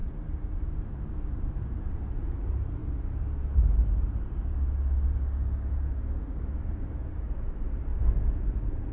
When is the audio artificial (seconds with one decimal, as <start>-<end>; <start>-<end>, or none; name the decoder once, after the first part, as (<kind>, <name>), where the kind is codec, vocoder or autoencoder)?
0.0-2.8 (vocoder, BigVGAN v2); 7.0-7.9; 8.4-8.9